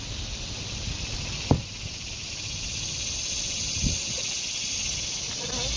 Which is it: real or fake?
real